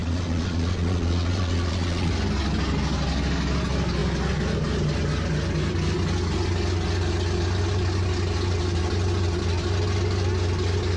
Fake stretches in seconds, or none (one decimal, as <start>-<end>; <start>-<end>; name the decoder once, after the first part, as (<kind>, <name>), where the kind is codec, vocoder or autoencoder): 0.0-2.1 (vocoder, Vocos)